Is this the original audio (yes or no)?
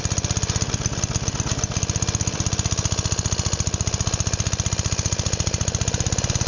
yes